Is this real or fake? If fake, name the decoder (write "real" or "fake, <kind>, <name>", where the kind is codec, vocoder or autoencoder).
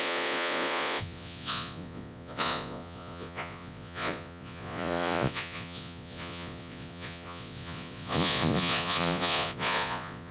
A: fake, vocoder, Vocos